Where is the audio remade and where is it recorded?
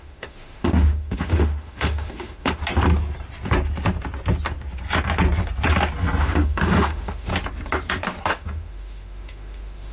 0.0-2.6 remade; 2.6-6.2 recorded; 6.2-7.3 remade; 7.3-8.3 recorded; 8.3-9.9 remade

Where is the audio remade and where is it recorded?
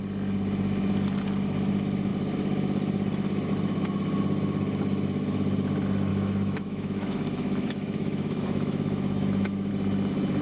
0.0-6.1 recorded; 6.1-9.7 remade; 9.7-10.4 recorded